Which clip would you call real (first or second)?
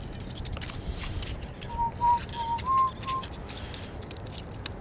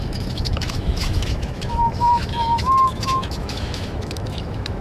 first